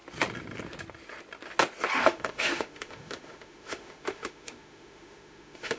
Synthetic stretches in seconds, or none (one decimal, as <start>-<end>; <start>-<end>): 2.0-5.8